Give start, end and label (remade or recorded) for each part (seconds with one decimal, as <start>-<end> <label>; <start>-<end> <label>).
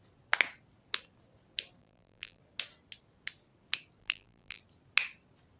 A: 0.0-1.8 recorded; 1.8-2.4 remade; 2.4-4.0 recorded; 4.0-4.6 remade; 4.6-5.6 recorded